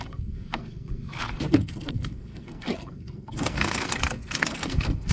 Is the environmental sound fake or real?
fake